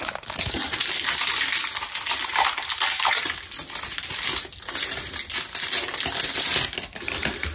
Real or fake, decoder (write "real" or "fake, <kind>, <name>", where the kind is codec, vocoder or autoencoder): real